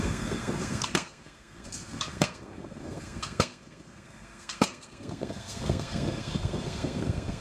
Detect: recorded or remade remade